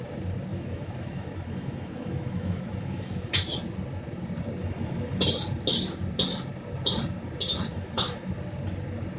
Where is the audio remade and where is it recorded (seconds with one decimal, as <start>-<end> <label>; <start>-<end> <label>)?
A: 0.0-0.5 recorded; 0.5-3.3 remade; 3.3-4.6 recorded; 4.6-5.2 remade; 5.2-7.7 recorded; 7.7-8.3 remade; 8.3-9.2 recorded